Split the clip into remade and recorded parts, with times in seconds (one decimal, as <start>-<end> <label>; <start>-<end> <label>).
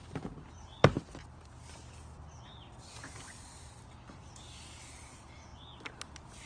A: 0.0-6.5 recorded